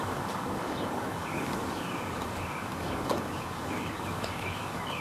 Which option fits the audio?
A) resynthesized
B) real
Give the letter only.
A